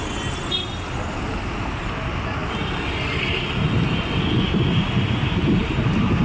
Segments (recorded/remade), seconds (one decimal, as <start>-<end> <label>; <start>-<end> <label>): 0.0-6.2 recorded